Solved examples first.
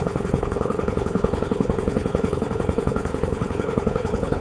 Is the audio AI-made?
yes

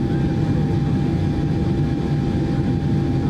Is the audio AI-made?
no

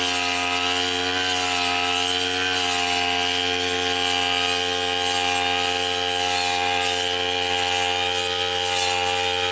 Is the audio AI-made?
no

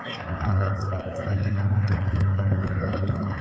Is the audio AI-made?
yes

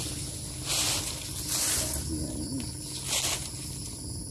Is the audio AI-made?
no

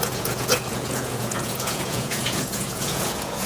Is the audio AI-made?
yes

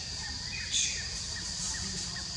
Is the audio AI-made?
no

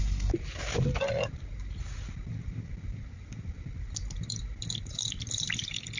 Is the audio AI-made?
no